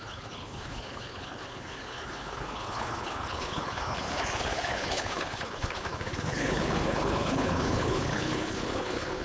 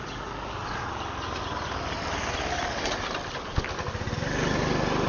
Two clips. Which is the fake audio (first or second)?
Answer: first